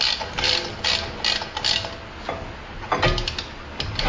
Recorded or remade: recorded